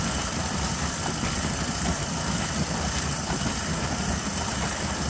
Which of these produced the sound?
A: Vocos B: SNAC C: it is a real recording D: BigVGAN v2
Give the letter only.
C